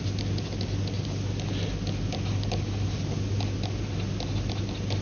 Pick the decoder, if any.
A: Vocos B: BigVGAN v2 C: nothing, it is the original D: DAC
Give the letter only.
C